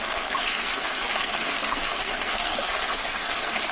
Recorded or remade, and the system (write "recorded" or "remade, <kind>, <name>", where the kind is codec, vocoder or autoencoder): remade, codec, SNAC